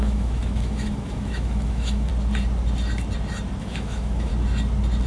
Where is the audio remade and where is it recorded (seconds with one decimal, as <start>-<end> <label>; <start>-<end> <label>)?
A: 0.0-2.1 remade; 2.1-3.6 recorded; 3.6-4.3 remade; 4.3-5.1 recorded